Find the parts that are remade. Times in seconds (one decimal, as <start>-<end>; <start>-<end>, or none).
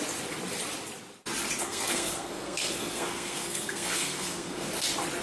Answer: 1.6-4.7